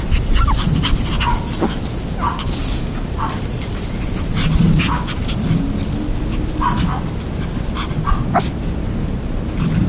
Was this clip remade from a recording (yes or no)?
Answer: no